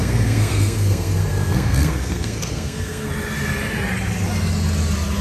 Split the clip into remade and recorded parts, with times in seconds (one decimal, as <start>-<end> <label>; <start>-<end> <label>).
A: 0.0-3.1 remade; 3.1-5.2 recorded